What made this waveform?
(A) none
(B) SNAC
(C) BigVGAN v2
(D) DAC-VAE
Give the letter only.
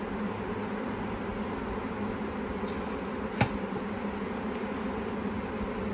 A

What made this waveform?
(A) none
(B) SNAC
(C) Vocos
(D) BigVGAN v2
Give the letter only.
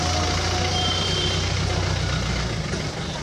A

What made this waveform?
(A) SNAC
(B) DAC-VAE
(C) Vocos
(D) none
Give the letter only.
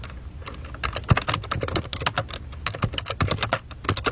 D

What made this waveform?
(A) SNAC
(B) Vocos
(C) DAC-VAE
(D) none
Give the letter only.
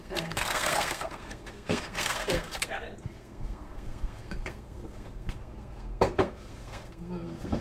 A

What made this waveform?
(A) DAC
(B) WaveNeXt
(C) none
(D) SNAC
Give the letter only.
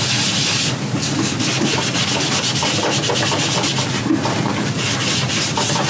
C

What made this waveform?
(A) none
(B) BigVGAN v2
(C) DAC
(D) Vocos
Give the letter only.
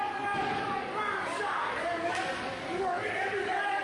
C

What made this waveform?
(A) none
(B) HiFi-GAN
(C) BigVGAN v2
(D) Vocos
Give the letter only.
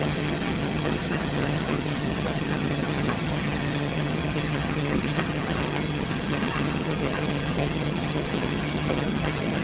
B